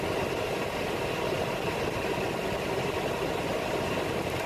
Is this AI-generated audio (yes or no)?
no